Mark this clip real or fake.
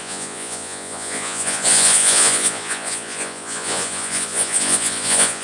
fake